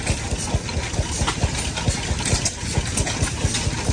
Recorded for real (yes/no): yes